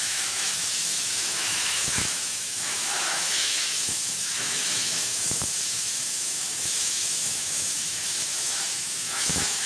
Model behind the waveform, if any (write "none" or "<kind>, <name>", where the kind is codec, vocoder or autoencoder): autoencoder, DAC-VAE